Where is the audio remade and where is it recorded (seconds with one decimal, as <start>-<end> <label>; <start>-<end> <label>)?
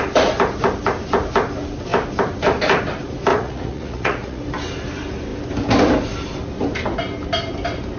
0.0-3.3 recorded; 3.3-4.4 remade; 4.4-8.0 recorded